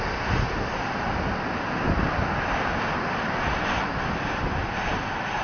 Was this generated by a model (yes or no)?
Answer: no